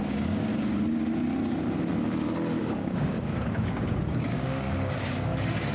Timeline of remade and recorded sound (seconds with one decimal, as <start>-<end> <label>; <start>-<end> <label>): 0.0-0.5 remade; 0.5-2.6 recorded; 2.6-5.7 remade